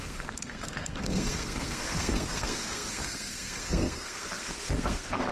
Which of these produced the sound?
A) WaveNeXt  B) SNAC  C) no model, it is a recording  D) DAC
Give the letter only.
B